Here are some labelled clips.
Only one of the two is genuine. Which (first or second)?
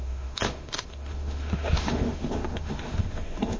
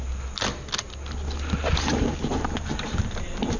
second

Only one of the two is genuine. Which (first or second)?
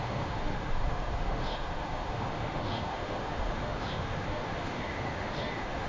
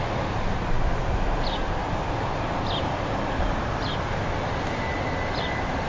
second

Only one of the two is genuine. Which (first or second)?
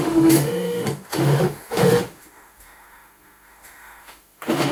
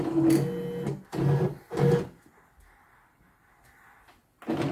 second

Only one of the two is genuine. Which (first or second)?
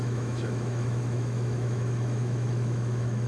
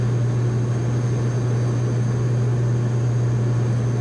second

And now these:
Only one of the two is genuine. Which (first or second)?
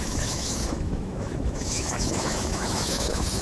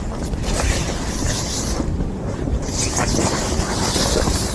second